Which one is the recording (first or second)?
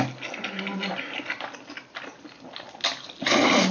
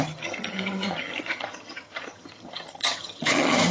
first